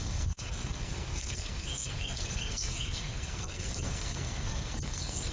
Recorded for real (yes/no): no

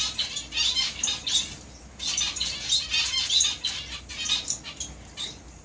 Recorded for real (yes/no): yes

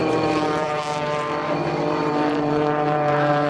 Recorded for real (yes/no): no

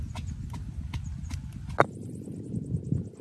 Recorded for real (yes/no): yes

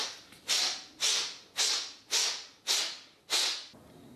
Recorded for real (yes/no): yes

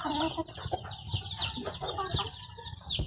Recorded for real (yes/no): no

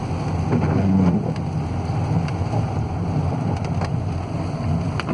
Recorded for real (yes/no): yes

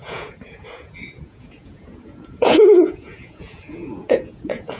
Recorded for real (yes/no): no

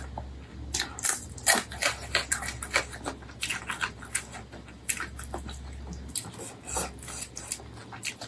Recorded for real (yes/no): yes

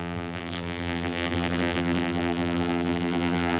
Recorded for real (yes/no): no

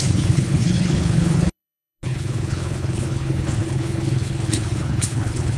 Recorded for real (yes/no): no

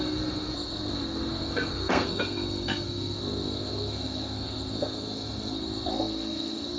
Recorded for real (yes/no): no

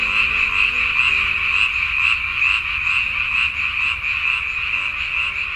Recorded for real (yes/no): yes